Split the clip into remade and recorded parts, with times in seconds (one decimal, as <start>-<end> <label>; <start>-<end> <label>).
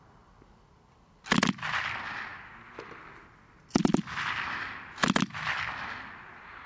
0.0-6.7 recorded